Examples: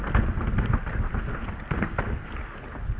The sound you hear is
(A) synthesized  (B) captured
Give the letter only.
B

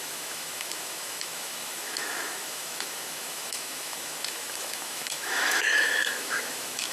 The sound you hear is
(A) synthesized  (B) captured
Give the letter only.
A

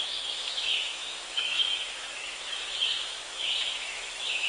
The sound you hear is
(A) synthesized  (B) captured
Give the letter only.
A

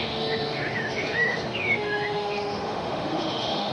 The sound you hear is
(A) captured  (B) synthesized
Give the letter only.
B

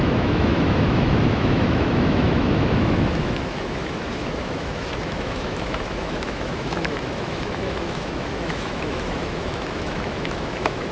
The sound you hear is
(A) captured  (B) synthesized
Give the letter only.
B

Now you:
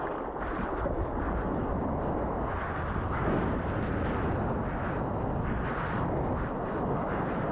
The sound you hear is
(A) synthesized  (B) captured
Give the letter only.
B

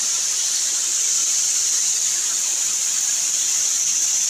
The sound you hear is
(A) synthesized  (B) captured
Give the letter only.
B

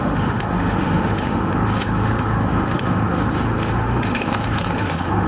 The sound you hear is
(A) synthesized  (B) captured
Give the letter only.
A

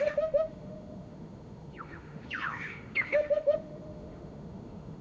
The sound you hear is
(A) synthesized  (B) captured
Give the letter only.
A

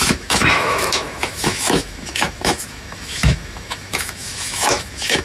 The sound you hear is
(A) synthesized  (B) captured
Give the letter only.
A